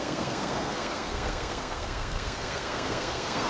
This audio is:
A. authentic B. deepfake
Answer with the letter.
B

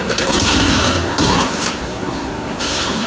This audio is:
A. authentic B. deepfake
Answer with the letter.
B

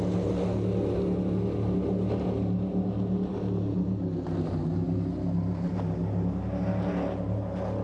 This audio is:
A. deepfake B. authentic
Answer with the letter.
B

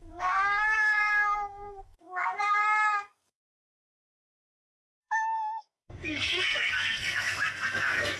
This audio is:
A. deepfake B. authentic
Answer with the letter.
A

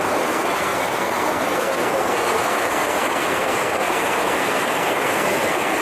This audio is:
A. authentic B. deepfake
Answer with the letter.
B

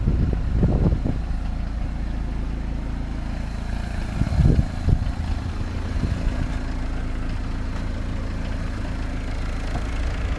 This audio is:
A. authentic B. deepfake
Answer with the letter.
A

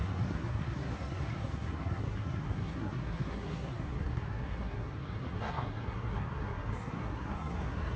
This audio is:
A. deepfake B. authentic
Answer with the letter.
A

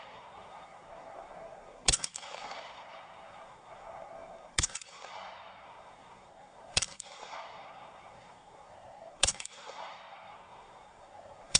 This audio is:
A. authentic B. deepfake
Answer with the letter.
B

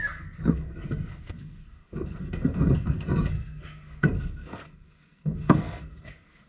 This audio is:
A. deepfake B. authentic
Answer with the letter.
A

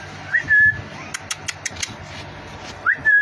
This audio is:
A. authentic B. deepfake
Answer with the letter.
A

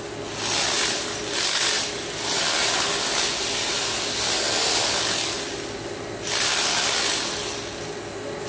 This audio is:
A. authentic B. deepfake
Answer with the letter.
A